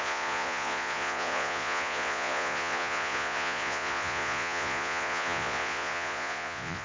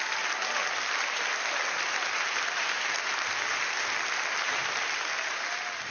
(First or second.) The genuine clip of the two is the second